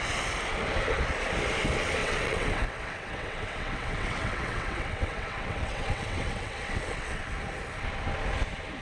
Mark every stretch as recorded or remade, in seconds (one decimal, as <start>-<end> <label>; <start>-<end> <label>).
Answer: 0.0-2.0 recorded; 2.0-7.2 remade; 7.2-8.8 recorded